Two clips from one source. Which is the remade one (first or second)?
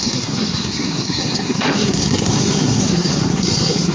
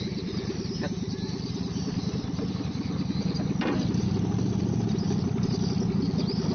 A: first